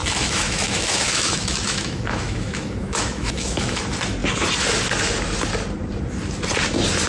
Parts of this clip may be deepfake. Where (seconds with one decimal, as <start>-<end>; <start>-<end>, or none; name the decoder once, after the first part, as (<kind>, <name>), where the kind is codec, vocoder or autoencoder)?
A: 0.0-3.8 (autoencoder, DAC-VAE)